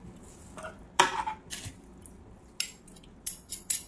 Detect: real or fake real